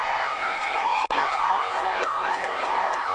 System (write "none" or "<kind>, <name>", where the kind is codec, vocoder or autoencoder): codec, SNAC